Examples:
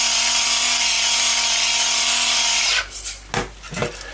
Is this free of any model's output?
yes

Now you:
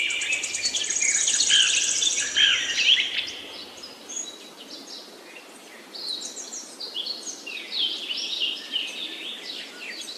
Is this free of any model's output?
yes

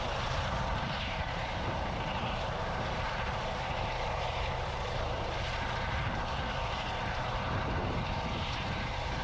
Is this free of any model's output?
no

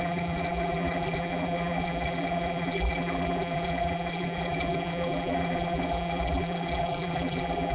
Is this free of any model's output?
no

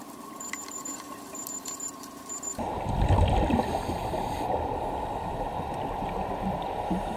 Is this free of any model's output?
no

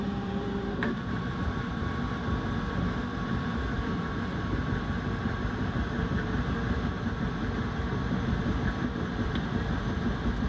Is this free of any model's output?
no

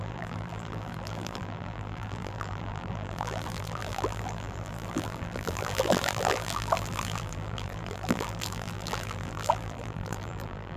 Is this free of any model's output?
no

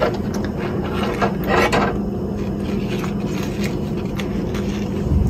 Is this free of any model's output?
yes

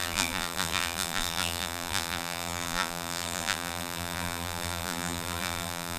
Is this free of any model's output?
no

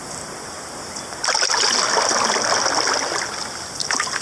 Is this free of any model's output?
yes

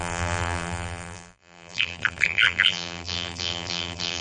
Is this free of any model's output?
no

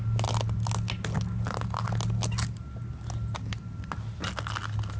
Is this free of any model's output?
yes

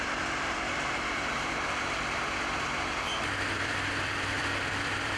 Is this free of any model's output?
no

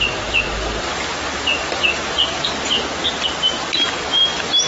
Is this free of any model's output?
yes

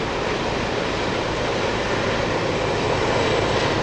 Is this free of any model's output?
yes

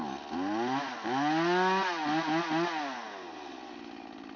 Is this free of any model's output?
yes